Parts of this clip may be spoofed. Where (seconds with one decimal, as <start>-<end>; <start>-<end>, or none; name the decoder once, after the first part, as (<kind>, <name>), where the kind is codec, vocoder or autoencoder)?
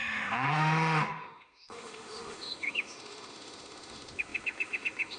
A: 0.0-5.2 (autoencoder, DAC-VAE)